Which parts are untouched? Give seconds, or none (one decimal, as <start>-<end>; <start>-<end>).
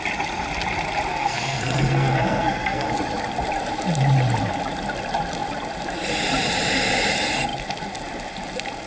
0.0-1.1; 2.9-8.9